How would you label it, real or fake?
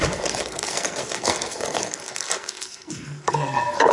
fake